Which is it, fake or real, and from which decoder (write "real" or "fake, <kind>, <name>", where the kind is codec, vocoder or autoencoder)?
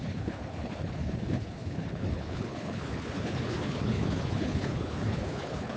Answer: fake, codec, HILCodec